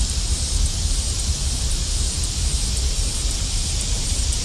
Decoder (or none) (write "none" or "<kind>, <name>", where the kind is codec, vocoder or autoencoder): vocoder, BigVGAN v2